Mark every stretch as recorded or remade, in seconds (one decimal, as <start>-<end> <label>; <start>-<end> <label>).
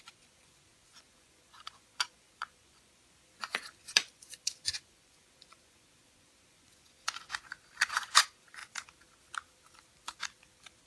0.0-7.3 remade; 7.3-7.9 recorded; 7.9-8.6 remade; 8.6-10.9 recorded